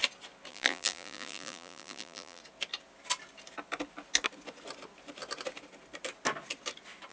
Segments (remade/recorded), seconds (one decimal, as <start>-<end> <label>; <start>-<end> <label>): 0.0-0.5 recorded; 0.5-2.4 remade; 2.4-7.1 recorded